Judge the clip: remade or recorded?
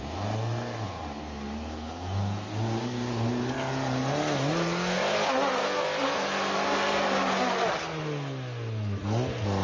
recorded